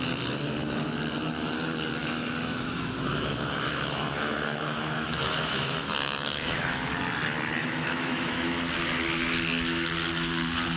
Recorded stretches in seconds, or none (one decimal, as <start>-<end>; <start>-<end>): 0.0-2.0; 7.0-7.6; 8.5-10.8